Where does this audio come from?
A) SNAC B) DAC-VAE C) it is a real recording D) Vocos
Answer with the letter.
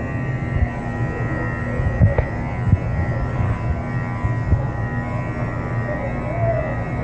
C